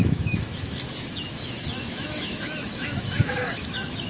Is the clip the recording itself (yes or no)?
no